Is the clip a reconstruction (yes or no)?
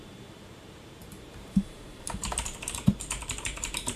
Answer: yes